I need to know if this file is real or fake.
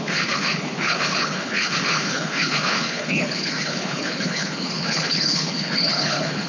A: fake